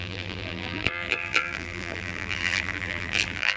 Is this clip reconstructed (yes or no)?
yes